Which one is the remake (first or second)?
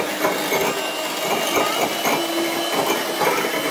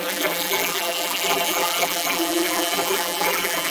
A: second